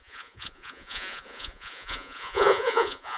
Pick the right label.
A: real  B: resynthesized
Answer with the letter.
B